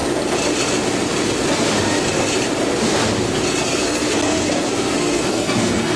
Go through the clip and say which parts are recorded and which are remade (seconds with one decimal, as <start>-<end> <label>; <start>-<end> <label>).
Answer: 0.0-3.6 recorded; 3.6-6.0 remade